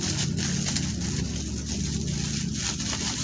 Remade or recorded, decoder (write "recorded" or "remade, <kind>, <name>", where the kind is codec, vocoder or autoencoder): recorded